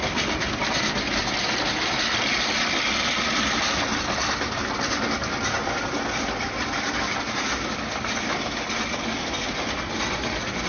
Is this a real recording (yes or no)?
yes